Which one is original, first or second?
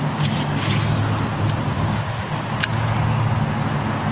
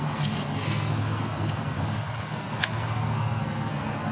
first